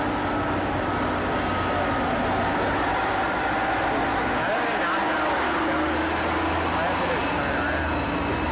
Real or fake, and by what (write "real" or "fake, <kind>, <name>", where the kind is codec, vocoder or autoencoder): real